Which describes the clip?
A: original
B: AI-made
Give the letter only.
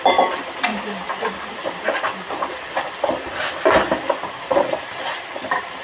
A